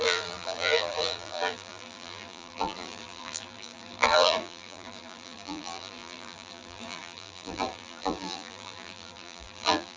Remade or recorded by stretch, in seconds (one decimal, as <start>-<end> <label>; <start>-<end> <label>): 0.0-10.0 remade